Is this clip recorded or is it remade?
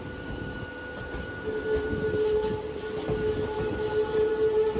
recorded